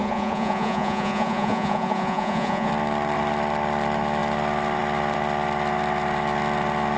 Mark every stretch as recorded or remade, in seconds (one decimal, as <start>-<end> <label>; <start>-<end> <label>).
0.0-2.7 remade; 2.7-7.0 recorded